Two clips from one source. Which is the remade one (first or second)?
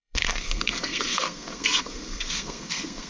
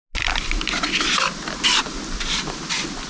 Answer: first